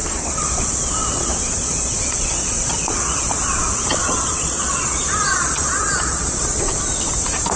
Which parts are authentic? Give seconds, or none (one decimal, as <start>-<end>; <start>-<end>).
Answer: 3.4-4.0; 6.7-7.6

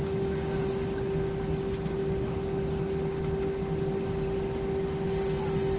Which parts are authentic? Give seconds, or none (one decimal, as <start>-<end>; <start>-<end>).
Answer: 0.0-5.8

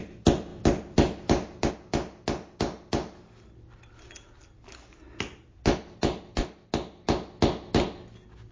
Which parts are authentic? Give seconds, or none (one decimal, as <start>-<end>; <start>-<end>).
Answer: 0.0-8.5